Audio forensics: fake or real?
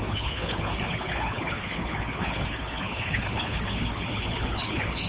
fake